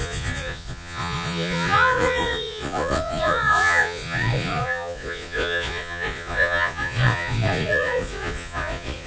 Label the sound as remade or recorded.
remade